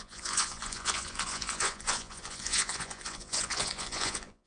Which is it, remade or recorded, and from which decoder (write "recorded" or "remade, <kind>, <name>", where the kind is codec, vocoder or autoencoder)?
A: remade, vocoder, Vocos